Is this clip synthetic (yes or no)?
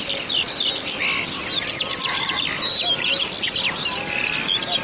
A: no